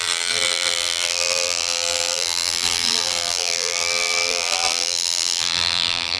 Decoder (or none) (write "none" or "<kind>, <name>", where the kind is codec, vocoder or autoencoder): vocoder, BigVGAN v2